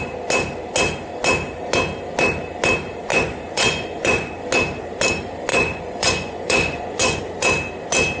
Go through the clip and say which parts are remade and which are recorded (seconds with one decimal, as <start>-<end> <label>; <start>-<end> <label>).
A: 0.0-3.1 recorded; 3.1-4.3 remade; 4.3-5.5 recorded; 5.5-7.2 remade; 7.2-8.2 recorded